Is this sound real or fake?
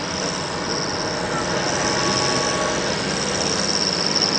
real